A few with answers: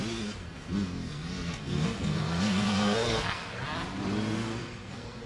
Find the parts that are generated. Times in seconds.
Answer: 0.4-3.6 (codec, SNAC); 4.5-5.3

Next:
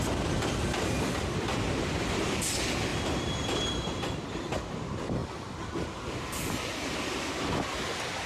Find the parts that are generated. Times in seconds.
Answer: 2.9-3.9 (vocoder, BigVGAN v2)